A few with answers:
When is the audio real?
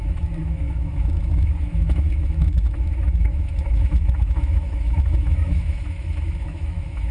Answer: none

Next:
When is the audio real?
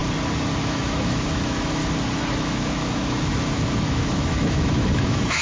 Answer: 0.0-0.6; 1.8-2.4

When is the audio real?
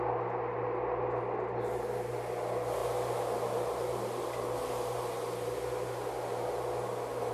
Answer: 0.0-7.3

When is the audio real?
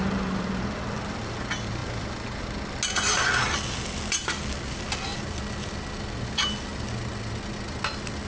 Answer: 0.0-8.3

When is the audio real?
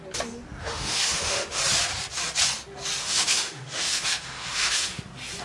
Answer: 0.0-0.6; 1.6-3.0; 5.0-5.4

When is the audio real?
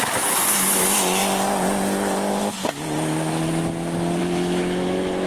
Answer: 0.0-4.2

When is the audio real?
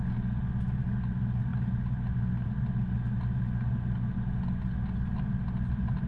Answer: 0.0-6.1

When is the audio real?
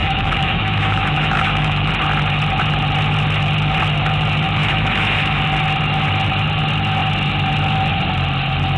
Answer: 1.9-4.6; 5.4-8.8